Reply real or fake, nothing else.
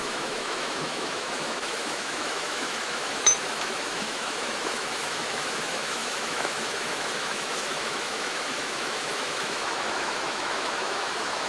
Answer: fake